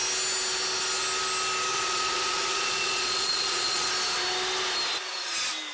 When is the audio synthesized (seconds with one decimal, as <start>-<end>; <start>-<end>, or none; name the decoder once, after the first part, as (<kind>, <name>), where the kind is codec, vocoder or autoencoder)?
1.7-3.9 (vocoder, Vocos)